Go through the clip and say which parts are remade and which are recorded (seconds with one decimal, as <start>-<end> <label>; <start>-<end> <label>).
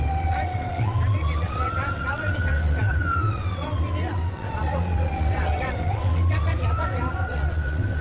0.0-8.0 remade